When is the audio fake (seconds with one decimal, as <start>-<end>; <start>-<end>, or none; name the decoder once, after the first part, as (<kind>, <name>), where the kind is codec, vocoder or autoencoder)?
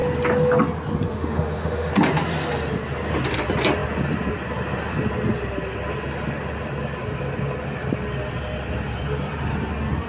1.1-1.9 (autoencoder, DAC-VAE)